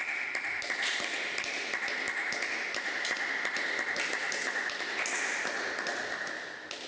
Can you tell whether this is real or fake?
real